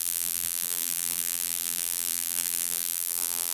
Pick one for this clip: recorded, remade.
remade